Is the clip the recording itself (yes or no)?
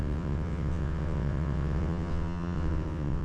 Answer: no